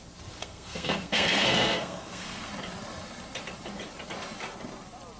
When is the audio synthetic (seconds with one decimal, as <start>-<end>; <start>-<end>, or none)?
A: 0.4-2.5